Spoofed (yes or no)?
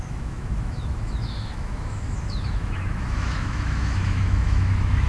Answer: yes